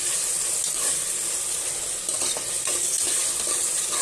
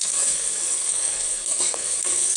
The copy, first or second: second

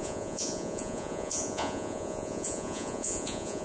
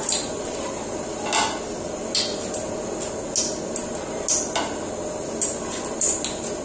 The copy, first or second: first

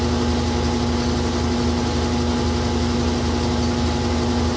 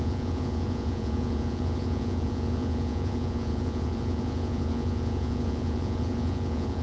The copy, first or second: second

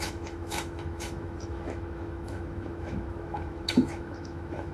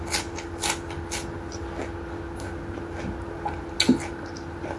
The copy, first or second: first